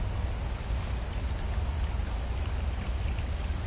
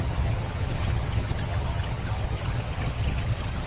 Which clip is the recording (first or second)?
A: first